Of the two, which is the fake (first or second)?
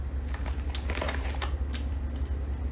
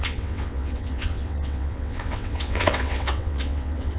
second